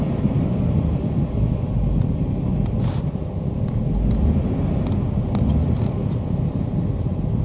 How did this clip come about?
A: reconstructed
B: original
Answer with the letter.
B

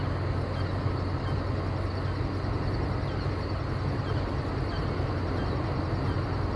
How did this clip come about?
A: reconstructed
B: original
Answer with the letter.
B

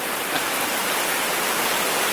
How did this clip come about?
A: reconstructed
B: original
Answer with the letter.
A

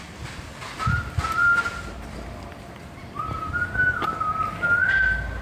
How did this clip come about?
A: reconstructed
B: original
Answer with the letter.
B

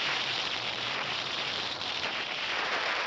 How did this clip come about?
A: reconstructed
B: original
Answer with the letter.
A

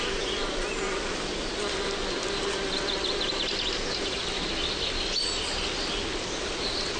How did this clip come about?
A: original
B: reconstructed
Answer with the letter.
A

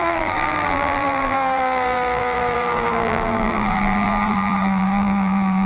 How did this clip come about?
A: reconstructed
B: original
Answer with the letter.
A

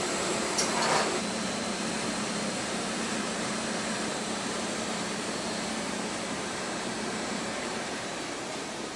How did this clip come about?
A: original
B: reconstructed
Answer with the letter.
B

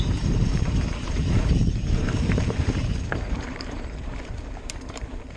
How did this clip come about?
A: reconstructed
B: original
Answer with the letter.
A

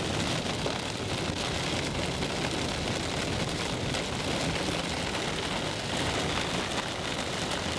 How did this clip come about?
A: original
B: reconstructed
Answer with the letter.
A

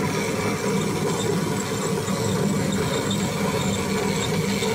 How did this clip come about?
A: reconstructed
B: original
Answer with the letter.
B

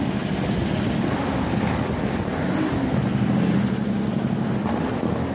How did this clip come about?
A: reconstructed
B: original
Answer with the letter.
B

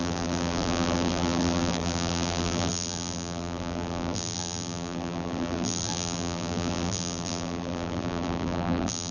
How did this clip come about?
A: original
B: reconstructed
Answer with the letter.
B